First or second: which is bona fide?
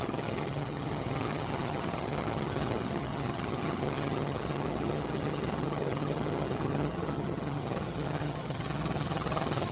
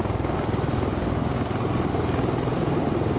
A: second